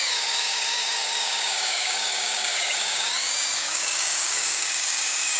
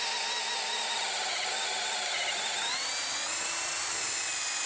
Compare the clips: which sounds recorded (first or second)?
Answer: second